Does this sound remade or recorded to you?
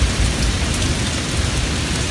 recorded